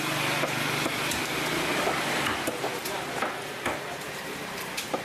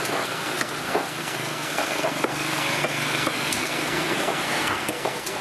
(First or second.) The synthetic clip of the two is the second